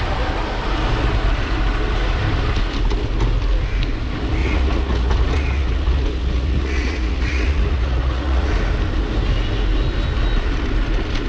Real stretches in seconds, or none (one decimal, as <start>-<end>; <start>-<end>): 0.0-4.4; 8.5-11.3